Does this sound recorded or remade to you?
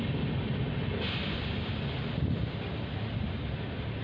recorded